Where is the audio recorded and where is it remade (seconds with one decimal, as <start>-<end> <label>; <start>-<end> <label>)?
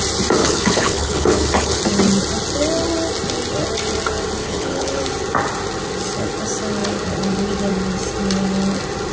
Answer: 0.0-0.4 recorded; 0.4-1.8 remade; 1.8-4.4 recorded; 4.4-5.0 remade; 5.0-9.1 recorded